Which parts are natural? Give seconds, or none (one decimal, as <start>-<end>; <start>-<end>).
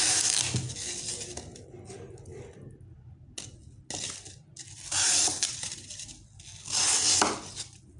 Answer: 0.0-8.0